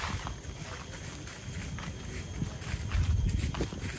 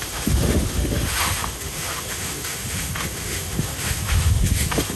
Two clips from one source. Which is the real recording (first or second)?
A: first